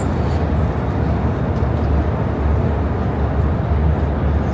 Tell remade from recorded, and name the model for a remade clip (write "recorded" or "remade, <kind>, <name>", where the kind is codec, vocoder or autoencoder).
recorded